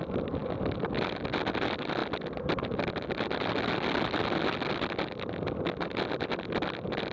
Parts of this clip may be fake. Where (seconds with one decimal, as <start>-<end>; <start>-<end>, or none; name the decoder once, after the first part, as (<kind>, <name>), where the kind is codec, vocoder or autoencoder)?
none